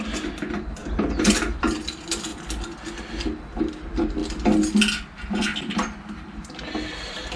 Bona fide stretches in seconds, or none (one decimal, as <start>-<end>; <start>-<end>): 0.0-7.4